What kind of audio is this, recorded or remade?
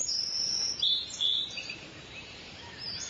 remade